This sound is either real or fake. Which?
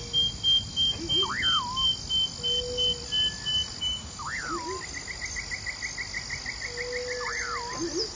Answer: real